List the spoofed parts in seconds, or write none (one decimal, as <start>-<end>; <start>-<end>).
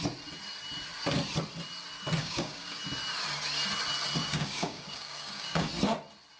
2.2-2.8; 4.2-5.7